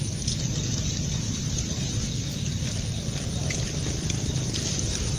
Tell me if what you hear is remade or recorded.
recorded